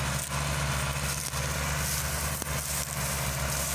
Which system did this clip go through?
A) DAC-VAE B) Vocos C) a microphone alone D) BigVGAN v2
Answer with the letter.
C